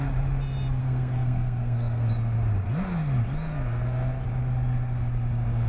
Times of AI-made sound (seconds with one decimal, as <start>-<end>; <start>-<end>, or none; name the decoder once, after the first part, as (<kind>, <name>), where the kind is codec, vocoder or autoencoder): 0.8-2.1 (codec, SNAC)